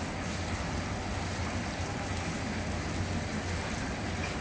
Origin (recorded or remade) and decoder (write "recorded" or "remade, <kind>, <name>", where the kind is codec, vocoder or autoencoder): recorded